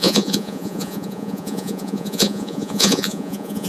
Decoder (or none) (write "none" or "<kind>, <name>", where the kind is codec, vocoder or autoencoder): vocoder, Vocos